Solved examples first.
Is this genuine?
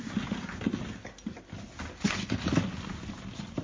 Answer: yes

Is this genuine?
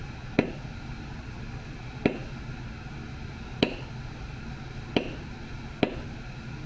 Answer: yes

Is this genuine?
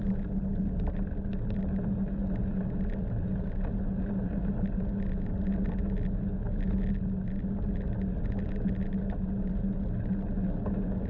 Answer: yes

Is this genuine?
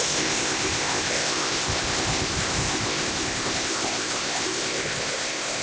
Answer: no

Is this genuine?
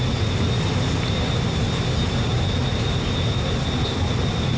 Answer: yes